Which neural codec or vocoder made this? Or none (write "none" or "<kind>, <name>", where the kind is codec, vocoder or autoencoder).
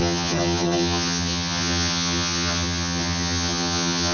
vocoder, HiFi-GAN